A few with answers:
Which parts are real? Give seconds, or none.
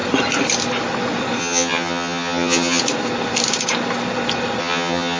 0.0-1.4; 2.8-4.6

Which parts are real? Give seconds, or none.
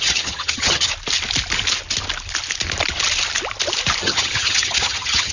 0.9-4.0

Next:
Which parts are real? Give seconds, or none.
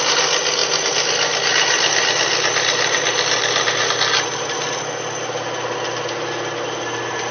0.0-7.3